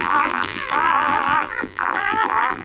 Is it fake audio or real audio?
fake